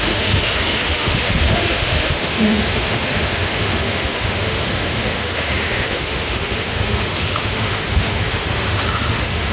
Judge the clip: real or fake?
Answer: fake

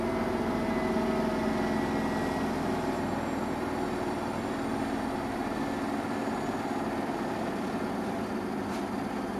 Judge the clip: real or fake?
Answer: real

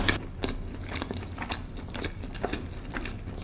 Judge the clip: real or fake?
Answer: real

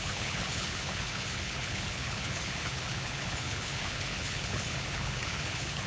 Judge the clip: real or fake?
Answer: fake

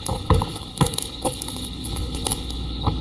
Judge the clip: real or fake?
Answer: fake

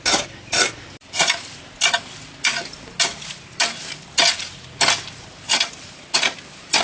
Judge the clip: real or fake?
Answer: real